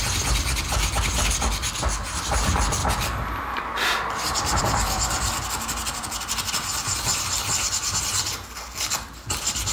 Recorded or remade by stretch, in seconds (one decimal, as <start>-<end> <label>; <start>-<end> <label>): 0.0-2.8 recorded; 2.8-4.6 remade; 4.6-9.7 recorded